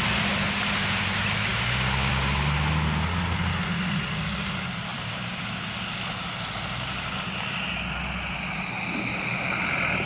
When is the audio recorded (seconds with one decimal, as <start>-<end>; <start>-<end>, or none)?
0.0-4.9; 5.4-10.1